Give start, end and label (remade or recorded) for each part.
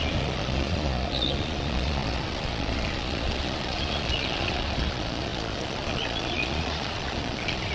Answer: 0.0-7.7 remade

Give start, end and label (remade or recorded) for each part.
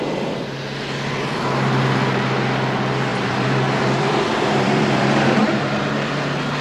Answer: 0.0-3.1 recorded; 3.1-5.8 remade; 5.8-6.6 recorded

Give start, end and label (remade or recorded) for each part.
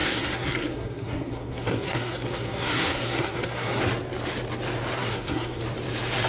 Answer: 0.0-3.8 remade; 3.8-5.0 recorded; 5.0-5.6 remade; 5.6-6.3 recorded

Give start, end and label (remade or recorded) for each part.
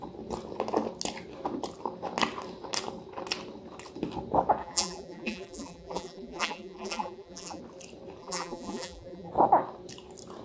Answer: 0.0-4.6 recorded; 4.6-7.6 remade; 7.6-8.2 recorded; 8.2-9.3 remade; 9.3-10.4 recorded